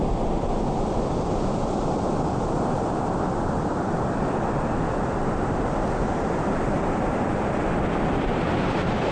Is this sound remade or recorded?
remade